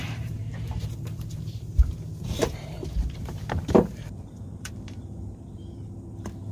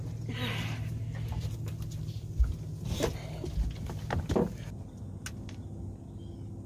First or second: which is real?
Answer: second